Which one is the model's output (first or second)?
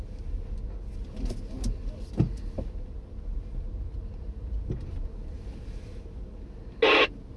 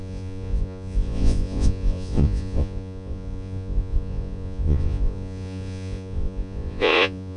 second